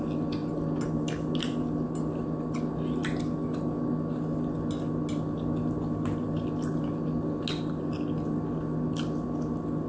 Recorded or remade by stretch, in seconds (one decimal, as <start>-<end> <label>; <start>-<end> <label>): 0.0-9.9 recorded